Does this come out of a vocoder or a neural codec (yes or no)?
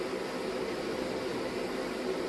no